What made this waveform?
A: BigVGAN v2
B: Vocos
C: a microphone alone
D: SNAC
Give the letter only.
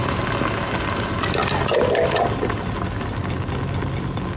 C